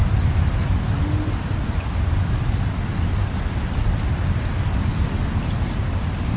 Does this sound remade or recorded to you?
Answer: recorded